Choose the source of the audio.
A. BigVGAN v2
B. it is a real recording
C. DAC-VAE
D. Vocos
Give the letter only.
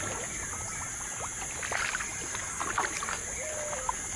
B